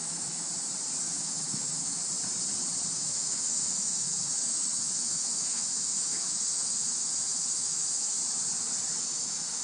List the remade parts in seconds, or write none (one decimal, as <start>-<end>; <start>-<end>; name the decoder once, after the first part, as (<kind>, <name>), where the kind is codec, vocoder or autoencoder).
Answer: 0.0-0.5 (autoencoder, DAC-VAE); 1.1-2.0; 2.9-8.2; 9.0-9.6